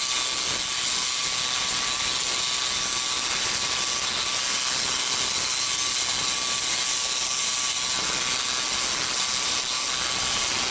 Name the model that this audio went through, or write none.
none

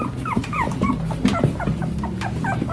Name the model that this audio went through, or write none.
none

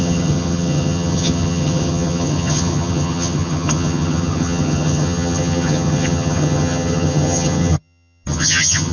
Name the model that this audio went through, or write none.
vocoder, HiFi-GAN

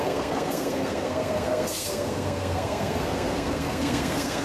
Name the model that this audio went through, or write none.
codec, SNAC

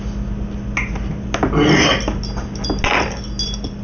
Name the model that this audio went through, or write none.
none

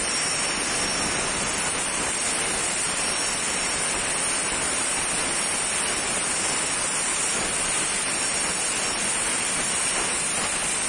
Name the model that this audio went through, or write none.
none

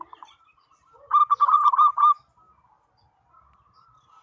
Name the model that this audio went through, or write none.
none